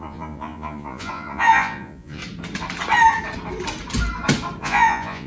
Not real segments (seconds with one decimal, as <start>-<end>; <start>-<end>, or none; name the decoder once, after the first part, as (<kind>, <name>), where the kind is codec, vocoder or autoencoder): 0.0-2.2 (vocoder, Vocos); 4.6-5.3

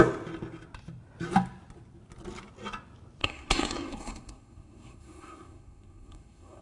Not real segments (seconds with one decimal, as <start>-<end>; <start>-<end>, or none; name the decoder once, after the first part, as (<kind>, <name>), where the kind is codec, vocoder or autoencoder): 3.2-6.6 (codec, SNAC)

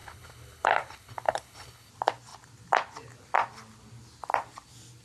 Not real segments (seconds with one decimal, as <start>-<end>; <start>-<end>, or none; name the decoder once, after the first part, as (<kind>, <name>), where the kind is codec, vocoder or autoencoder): 0.0-1.9 (codec, HILCodec)

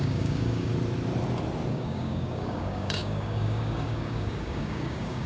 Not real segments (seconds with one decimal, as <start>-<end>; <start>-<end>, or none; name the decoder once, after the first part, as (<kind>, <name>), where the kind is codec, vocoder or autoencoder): 0.0-0.7 (codec, DAC); 1.7-5.3

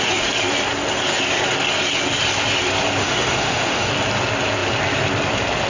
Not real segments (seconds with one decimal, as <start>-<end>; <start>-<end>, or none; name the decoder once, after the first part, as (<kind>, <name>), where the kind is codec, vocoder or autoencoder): 3.0-3.9 (autoencoder, DAC-VAE)

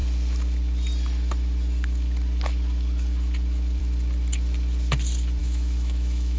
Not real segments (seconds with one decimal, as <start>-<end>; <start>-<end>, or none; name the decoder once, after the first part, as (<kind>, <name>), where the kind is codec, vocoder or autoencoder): 5.4-6.4 (autoencoder, DAC-VAE)